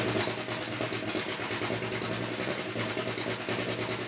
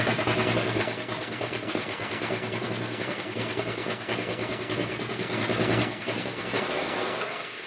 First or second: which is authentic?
first